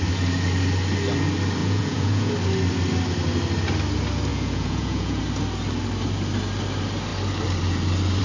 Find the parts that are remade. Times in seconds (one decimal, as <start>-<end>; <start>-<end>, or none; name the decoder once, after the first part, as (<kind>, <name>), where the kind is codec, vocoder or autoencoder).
1.6-2.3 (vocoder, Vocos); 4.3-5.2